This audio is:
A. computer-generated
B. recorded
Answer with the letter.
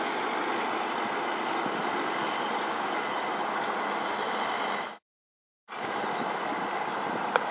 B